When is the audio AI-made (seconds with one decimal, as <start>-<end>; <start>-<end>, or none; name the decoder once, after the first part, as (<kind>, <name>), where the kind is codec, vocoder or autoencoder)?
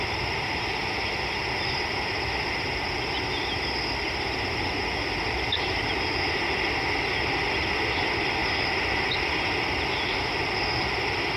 none